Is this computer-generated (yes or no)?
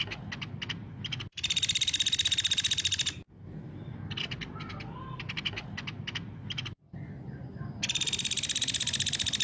no